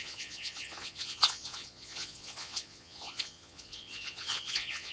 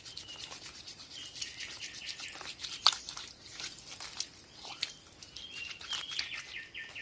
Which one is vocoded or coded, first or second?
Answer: first